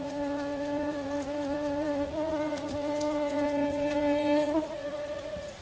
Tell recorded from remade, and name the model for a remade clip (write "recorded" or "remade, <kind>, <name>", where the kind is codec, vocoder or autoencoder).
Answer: remade, vocoder, Vocos